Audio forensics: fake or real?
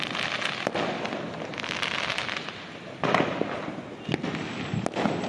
real